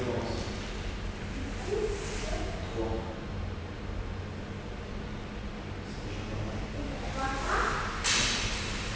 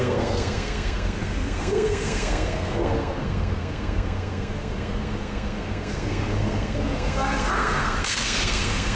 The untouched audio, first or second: first